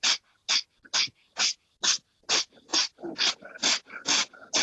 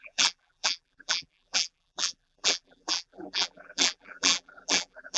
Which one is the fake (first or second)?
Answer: second